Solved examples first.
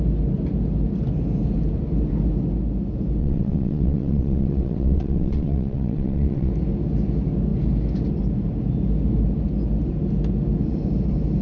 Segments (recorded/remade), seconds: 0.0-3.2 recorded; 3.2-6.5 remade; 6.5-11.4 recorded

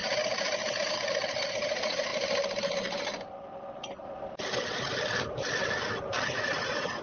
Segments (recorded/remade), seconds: 0.0-1.5 recorded; 1.5-2.1 remade; 2.1-6.3 recorded; 6.3-7.0 remade

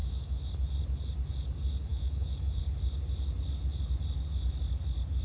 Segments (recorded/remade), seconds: 0.0-0.5 remade; 0.5-1.9 recorded; 1.9-2.6 remade; 2.6-5.2 recorded